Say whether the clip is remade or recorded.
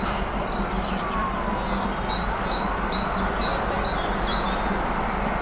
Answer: recorded